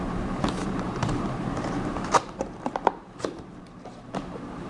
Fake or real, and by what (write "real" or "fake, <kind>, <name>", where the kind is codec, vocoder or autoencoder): fake, vocoder, BigVGAN v2